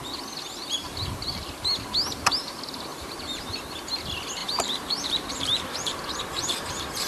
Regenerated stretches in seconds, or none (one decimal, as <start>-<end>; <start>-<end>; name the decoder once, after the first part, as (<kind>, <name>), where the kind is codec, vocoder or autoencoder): 0.8-1.5 (vocoder, BigVGAN v2); 2.9-3.5; 4.4-6.2